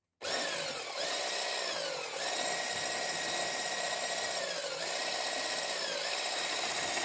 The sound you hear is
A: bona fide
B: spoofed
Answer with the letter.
A